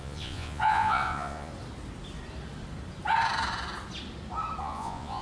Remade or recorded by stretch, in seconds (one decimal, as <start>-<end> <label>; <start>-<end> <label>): 0.0-1.5 remade; 1.5-4.6 recorded; 4.6-5.2 remade